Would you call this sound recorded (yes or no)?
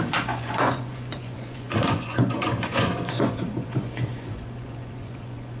no